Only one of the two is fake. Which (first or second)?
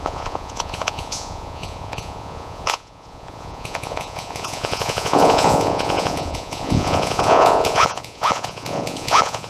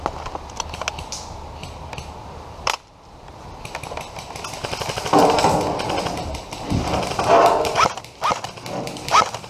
first